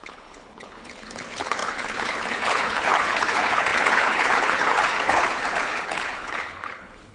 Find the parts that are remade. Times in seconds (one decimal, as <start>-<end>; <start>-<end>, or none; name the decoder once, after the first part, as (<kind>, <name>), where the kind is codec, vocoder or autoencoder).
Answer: 0.0-7.1 (codec, HILCodec)